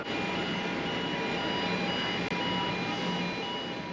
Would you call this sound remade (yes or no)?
no